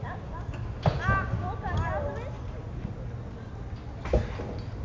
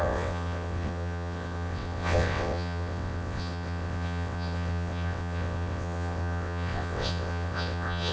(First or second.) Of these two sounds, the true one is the first